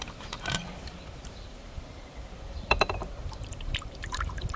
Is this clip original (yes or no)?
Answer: no